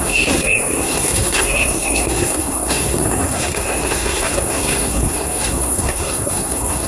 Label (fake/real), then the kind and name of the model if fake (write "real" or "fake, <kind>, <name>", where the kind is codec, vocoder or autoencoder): fake, codec, SNAC